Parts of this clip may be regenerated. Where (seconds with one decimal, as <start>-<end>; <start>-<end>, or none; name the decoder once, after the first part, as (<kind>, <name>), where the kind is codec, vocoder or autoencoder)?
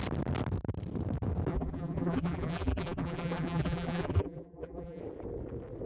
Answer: 1.5-5.0 (vocoder, BigVGAN v2)